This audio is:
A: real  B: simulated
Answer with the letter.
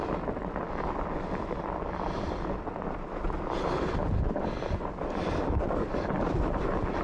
B